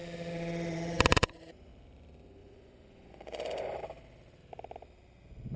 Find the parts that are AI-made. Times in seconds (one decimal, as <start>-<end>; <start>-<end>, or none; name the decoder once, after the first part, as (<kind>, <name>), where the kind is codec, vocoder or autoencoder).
0.0-1.7 (vocoder, Vocos); 2.4-3.8